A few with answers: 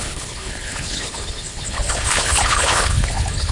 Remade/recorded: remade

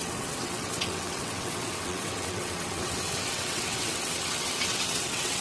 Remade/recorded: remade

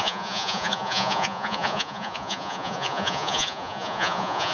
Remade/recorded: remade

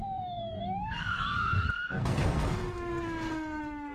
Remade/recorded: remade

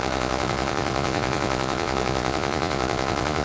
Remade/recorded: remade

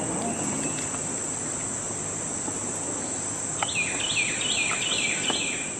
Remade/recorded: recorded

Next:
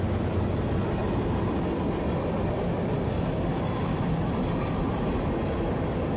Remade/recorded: recorded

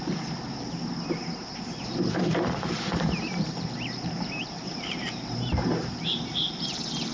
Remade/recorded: remade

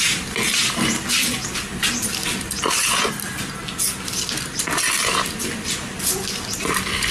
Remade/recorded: recorded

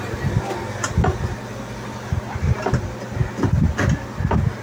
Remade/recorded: recorded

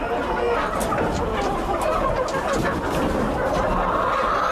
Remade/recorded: recorded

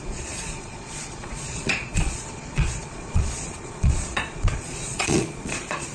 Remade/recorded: remade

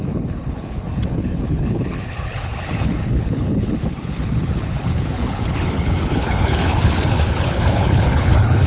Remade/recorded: remade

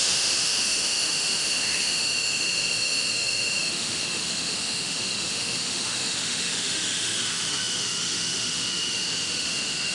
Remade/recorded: remade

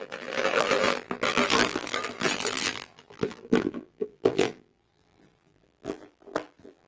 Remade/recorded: remade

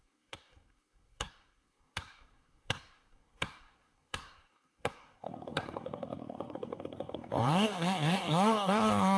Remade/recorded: remade